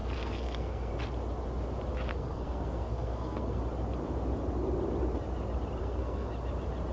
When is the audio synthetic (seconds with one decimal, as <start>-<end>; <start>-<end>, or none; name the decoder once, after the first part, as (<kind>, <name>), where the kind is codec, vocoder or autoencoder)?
0.0-0.9 (codec, SNAC); 2.1-3.6; 5.8-6.3